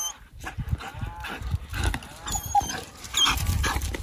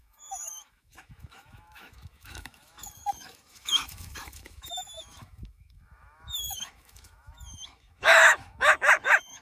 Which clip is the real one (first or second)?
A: first